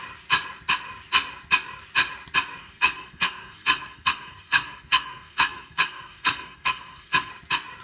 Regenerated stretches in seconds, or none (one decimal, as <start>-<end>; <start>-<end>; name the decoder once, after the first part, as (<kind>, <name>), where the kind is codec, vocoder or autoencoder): 2.6-7.3 (codec, SNAC)